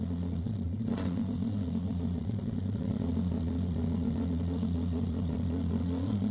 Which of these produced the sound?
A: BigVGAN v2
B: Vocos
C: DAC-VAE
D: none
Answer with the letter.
B